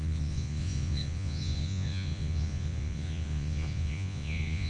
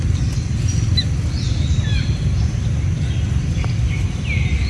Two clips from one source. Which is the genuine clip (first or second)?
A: second